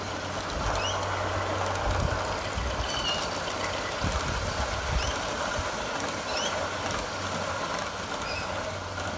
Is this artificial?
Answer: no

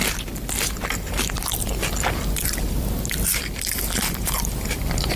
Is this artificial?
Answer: yes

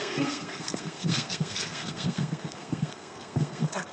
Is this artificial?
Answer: yes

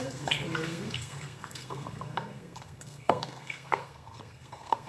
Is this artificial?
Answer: yes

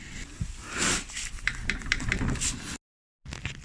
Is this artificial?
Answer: no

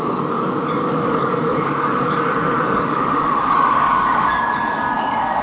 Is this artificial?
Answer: yes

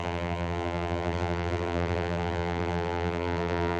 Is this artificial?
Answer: yes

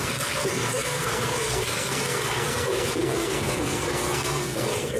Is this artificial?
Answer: yes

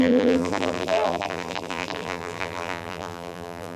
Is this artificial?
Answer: yes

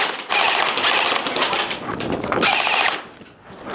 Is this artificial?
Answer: no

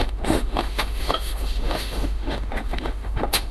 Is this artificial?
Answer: yes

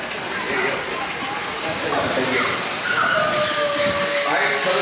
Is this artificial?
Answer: no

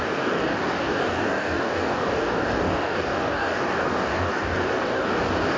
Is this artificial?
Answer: yes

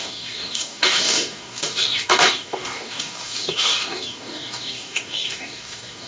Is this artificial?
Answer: yes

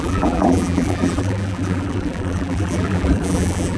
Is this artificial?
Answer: yes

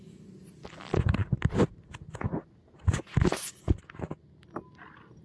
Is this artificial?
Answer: no